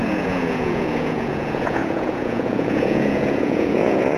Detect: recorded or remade remade